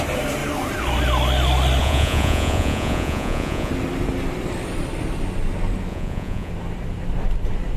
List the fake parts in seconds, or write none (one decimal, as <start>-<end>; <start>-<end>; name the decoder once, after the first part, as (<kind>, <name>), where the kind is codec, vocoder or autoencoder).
1.8-3.7 (vocoder, Vocos); 5.9-6.5